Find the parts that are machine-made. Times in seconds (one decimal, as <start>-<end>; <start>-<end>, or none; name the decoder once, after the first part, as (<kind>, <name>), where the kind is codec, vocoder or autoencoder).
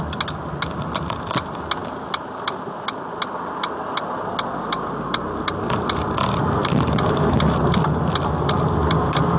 none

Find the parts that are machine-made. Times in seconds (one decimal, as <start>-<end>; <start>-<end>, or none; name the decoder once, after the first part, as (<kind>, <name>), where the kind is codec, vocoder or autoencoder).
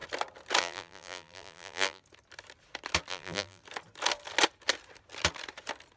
0.6-2.0 (vocoder, BigVGAN v2); 3.1-3.6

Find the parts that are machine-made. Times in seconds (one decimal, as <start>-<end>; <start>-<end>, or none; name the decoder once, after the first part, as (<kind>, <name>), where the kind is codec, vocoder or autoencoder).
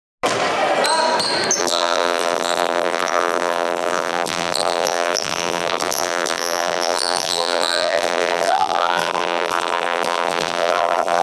1.6-11.2 (vocoder, BigVGAN v2)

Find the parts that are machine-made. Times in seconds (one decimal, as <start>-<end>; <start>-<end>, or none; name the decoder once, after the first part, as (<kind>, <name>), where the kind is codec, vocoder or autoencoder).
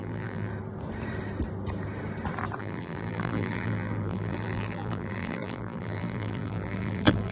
0.0-0.5 (vocoder, BigVGAN v2); 2.6-7.3